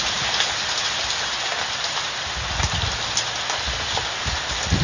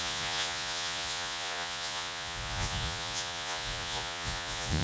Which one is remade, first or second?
second